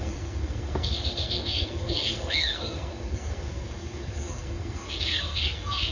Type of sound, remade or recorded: remade